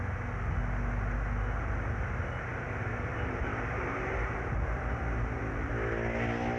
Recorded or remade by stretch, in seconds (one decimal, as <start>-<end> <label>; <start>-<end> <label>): 0.0-2.5 recorded; 2.5-5.7 remade; 5.7-6.6 recorded